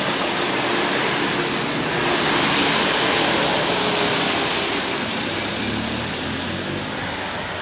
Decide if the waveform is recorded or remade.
recorded